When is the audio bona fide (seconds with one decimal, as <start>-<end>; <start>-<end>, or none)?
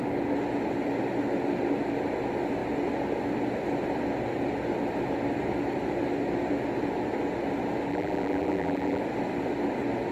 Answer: 0.0-7.9; 9.0-10.1